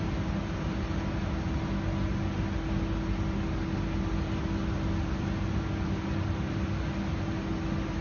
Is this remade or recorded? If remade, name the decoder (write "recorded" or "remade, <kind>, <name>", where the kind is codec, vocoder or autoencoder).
recorded